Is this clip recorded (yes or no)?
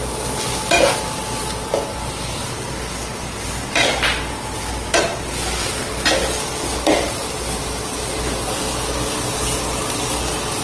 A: yes